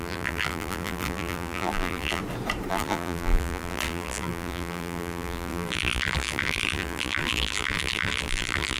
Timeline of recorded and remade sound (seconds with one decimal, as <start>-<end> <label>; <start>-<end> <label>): 0.0-2.2 remade; 2.2-2.7 recorded; 2.7-8.8 remade